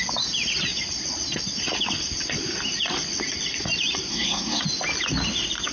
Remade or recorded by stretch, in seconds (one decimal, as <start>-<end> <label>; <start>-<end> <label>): 0.0-4.1 recorded; 4.1-4.6 remade; 4.6-5.7 recorded